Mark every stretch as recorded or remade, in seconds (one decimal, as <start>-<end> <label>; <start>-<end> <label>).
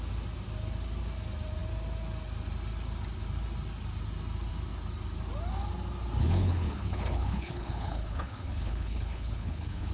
0.0-6.2 recorded; 6.2-9.9 remade